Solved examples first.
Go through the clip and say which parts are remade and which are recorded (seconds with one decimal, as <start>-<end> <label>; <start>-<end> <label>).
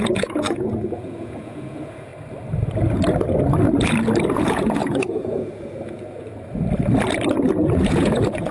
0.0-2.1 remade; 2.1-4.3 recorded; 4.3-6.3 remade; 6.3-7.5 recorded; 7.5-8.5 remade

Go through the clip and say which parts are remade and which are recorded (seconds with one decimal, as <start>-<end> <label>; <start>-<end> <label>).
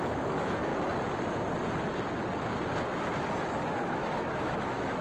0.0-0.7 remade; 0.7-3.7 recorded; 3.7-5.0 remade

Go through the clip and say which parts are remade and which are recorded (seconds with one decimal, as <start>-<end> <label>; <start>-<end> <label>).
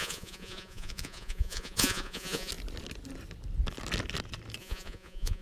0.0-2.5 remade; 2.5-4.6 recorded; 4.6-5.4 remade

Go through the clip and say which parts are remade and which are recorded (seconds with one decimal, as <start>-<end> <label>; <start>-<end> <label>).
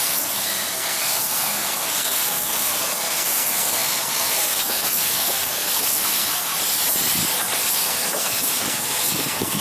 0.0-6.5 remade; 6.5-7.7 recorded; 7.7-9.6 remade